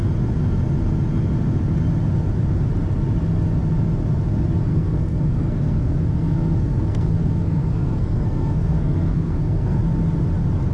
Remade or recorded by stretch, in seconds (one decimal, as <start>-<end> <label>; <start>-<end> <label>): 0.0-4.7 recorded; 4.7-9.8 remade; 9.8-10.7 recorded